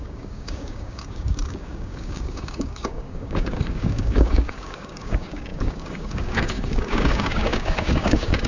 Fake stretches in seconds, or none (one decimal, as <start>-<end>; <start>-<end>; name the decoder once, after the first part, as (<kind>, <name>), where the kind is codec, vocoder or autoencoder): 0.0-8.5 (codec, DAC)